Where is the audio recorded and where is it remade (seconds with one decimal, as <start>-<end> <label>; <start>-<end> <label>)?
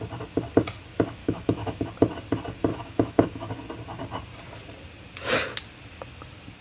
0.0-1.2 recorded; 1.2-1.8 remade; 1.8-2.7 recorded; 2.7-3.5 remade; 3.5-6.6 recorded